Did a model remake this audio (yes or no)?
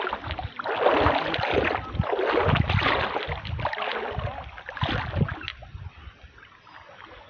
no